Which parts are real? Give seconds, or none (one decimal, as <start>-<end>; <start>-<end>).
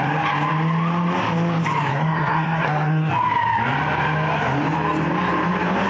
0.0-1.9; 3.1-5.9